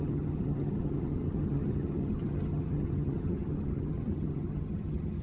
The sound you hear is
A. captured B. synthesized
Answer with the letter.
B